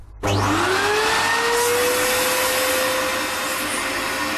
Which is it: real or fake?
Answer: real